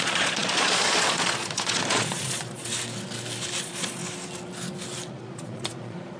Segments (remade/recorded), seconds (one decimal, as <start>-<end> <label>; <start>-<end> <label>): 0.0-2.7 remade; 2.7-3.6 recorded; 3.6-4.0 remade; 4.0-5.1 recorded; 5.1-6.2 remade